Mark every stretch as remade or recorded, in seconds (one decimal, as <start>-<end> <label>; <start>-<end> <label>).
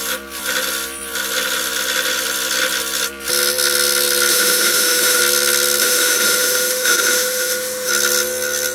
0.0-4.3 recorded; 4.3-5.2 remade; 5.2-5.8 recorded; 5.8-7.9 remade; 7.9-8.7 recorded